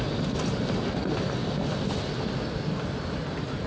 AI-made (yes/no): no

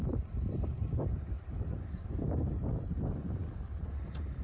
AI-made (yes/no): yes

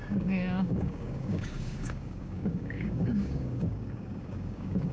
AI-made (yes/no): yes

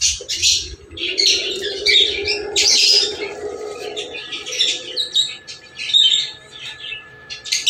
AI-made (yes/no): yes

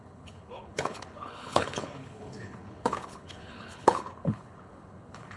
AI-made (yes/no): yes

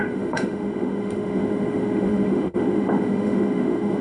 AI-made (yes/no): yes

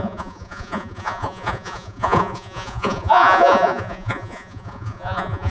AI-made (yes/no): yes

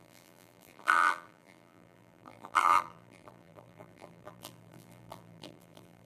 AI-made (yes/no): yes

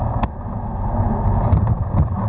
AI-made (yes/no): no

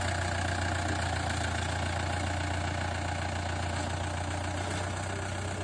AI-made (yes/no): no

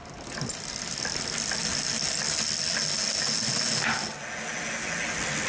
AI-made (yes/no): no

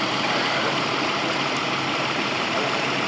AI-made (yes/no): yes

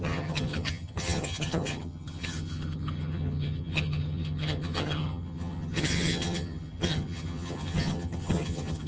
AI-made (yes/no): yes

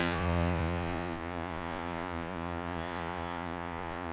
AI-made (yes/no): yes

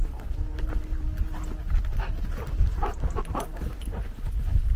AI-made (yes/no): no